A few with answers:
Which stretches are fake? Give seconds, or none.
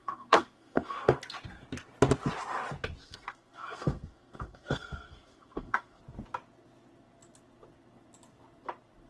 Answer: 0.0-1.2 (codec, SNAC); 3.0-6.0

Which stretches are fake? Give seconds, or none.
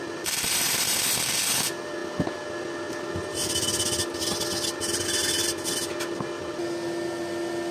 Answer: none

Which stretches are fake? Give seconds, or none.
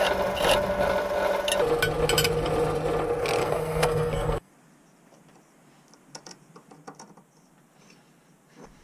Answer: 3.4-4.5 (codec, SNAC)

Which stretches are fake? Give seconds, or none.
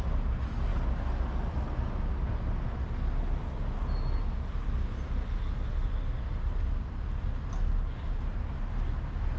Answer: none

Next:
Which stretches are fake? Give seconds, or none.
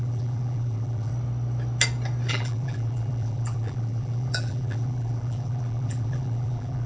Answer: 0.0-1.1 (vocoder, BigVGAN v2); 2.3-6.9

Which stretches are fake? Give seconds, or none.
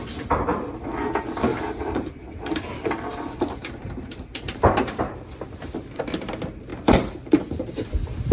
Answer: 1.5-6.0 (vocoder, BigVGAN v2); 6.7-7.7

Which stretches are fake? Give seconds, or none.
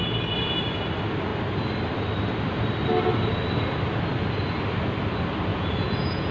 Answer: 5.5-6.3 (vocoder, Vocos)